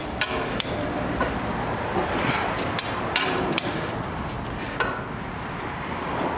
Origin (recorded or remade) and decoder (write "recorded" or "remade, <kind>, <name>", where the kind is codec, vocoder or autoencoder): remade, vocoder, BigVGAN v2